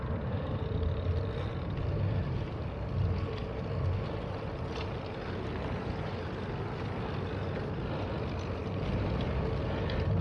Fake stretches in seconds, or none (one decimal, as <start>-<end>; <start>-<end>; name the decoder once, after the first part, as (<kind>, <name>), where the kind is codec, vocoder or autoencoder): none